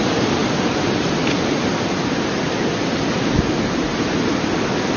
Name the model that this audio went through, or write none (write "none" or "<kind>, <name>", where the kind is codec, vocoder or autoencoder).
none